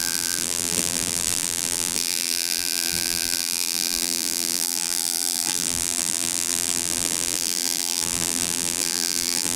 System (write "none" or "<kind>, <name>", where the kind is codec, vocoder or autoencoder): vocoder, BigVGAN v2